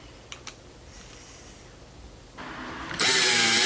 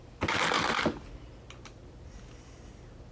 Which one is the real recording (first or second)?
second